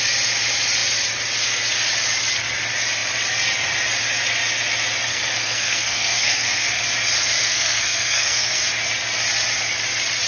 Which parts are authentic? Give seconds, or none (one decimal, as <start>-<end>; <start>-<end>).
0.0-5.1; 6.8-7.4; 8.6-10.3